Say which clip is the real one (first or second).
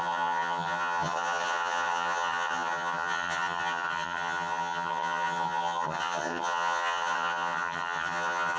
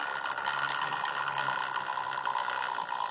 second